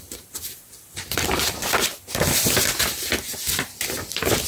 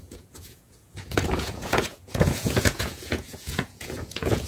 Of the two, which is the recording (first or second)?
first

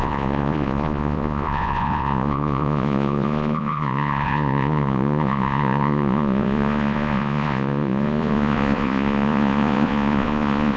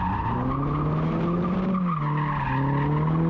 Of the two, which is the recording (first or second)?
second